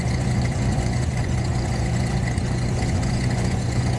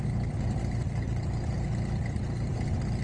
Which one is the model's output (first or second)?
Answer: first